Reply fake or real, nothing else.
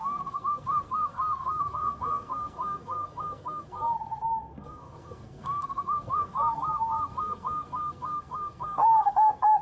fake